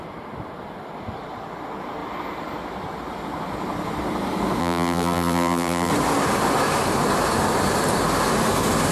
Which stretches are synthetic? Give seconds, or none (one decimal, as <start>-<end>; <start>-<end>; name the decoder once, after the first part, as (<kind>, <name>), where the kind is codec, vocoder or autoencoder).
4.6-5.9 (vocoder, BigVGAN v2)